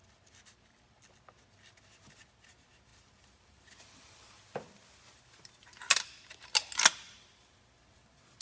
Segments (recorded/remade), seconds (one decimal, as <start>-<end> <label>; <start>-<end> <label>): 0.0-8.4 recorded